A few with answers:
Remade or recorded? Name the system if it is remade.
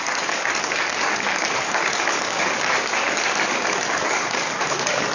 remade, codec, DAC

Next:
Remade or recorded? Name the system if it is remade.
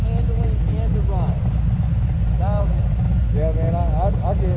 recorded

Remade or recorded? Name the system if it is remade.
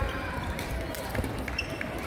remade, vocoder, BigVGAN v2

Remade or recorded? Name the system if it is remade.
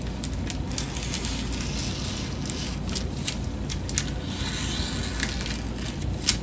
recorded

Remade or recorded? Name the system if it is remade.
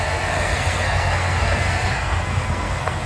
remade, codec, SNAC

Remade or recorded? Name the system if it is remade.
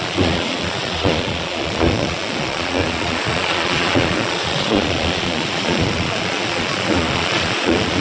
remade, vocoder, Vocos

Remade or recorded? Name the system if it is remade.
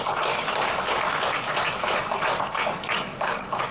remade, codec, DAC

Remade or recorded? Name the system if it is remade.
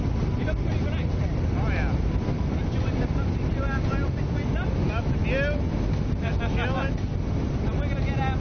recorded